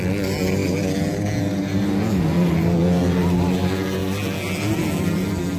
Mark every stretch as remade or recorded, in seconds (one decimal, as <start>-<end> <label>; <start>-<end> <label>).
0.0-5.6 recorded